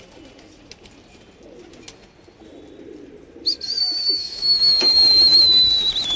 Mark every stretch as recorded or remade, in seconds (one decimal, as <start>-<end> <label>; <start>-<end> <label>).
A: 0.0-3.8 recorded; 3.8-5.7 remade; 5.7-6.2 recorded